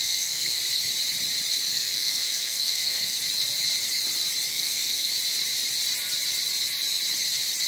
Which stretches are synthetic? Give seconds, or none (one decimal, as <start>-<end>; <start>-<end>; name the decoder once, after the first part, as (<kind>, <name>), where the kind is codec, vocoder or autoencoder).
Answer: 0.0-0.6 (codec, SNAC); 1.7-3.2; 4.5-5.1